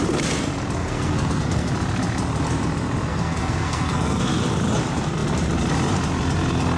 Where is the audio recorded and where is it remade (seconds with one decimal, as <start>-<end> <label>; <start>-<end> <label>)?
0.0-0.8 recorded; 0.8-1.7 remade; 1.7-3.1 recorded; 3.1-4.2 remade; 4.2-6.8 recorded